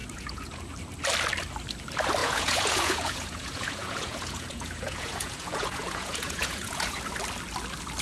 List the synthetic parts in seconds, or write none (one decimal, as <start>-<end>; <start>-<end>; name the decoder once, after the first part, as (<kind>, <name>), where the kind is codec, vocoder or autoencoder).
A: 0.0-0.6 (vocoder, Vocos); 2.2-7.0